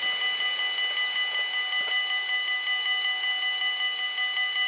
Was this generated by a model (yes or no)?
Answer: no